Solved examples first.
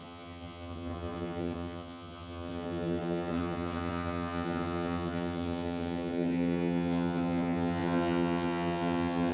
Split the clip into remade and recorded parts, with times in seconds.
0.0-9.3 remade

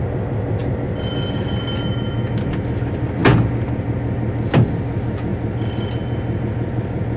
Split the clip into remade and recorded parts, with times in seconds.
0.0-7.2 recorded

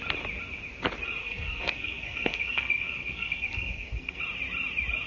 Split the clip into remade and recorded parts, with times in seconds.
0.0-1.2 recorded; 1.2-4.2 remade; 4.2-5.1 recorded

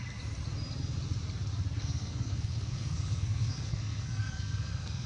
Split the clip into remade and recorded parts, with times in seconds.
0.0-1.8 recorded; 1.8-5.1 remade

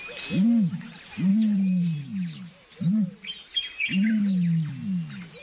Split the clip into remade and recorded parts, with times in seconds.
0.0-1.3 recorded; 1.3-4.2 remade; 4.2-5.4 recorded

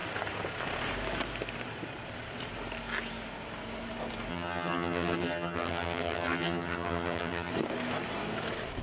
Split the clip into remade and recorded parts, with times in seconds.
0.0-4.3 recorded; 4.3-7.5 remade; 7.5-8.8 recorded

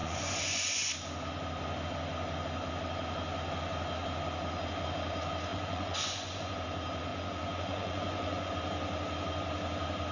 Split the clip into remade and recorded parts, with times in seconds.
0.0-0.9 remade; 0.9-5.5 recorded; 5.5-6.5 remade; 6.5-7.1 recorded; 7.1-8.5 remade; 8.5-10.1 recorded

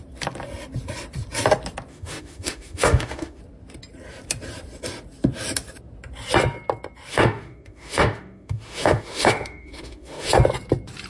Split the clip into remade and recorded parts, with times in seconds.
0.0-1.9 recorded; 1.9-3.4 remade; 3.4-7.1 recorded; 7.1-10.3 remade; 10.3-11.1 recorded